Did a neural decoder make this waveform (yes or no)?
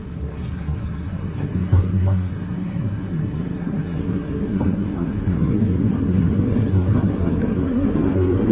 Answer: yes